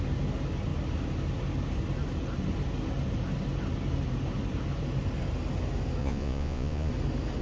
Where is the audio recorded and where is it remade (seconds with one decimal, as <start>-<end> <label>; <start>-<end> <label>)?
0.0-6.0 recorded; 6.0-6.9 remade; 6.9-7.4 recorded